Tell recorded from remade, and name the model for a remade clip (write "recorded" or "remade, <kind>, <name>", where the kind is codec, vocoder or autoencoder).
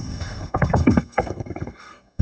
remade, codec, SNAC